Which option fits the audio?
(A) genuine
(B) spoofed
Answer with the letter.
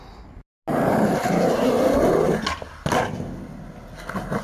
A